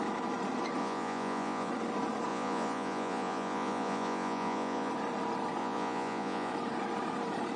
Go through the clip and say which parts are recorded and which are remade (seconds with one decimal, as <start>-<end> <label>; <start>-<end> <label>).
0.0-0.8 recorded; 0.8-1.7 remade; 1.7-2.3 recorded; 2.3-4.9 remade; 4.9-5.6 recorded; 5.6-6.5 remade; 6.5-7.6 recorded